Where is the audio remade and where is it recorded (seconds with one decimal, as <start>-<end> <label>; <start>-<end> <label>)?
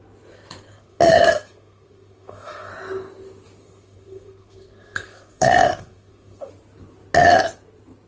0.0-0.7 recorded; 0.7-2.7 remade; 2.7-3.6 recorded; 3.6-6.5 remade; 6.5-8.1 recorded